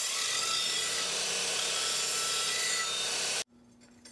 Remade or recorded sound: recorded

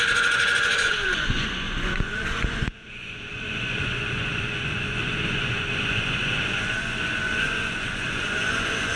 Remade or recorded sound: remade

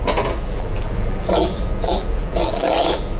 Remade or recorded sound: remade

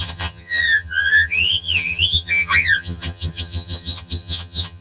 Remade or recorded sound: remade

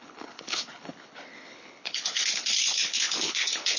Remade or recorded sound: remade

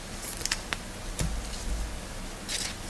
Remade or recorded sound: recorded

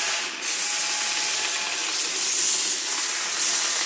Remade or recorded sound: recorded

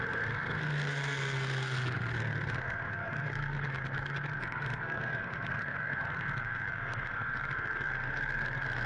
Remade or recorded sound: remade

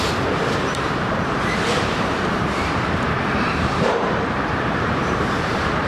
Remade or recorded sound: remade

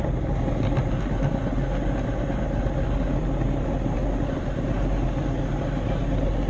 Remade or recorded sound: recorded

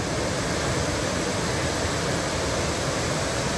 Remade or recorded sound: recorded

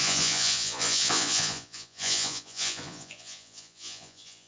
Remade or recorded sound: remade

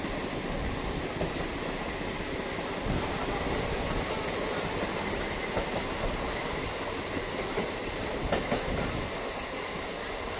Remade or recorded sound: recorded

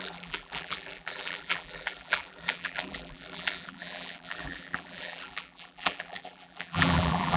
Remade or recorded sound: remade